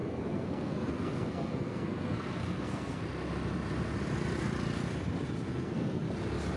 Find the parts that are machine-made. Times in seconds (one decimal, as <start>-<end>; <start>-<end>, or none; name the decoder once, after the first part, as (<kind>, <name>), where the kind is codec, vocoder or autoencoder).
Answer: 0.0-3.0 (codec, SNAC); 5.5-6.0